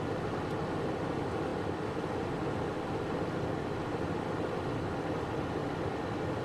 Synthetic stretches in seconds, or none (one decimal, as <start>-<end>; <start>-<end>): none